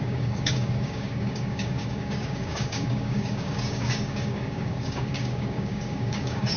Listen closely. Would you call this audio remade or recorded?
remade